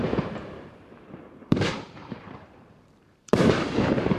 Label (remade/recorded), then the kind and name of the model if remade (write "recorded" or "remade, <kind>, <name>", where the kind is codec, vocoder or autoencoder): remade, vocoder, BigVGAN v2